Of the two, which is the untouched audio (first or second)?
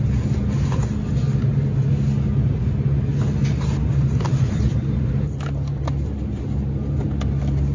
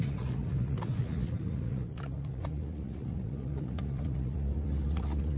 first